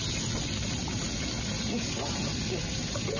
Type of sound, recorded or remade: recorded